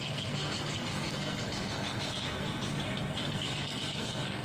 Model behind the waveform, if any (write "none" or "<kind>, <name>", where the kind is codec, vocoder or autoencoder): codec, SNAC